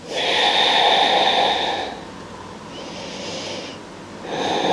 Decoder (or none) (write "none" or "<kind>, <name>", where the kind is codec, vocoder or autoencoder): none